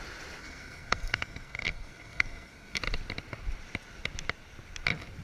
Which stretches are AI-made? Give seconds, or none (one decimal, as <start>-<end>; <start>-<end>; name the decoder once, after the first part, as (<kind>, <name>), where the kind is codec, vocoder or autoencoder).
0.4-2.8 (codec, SNAC)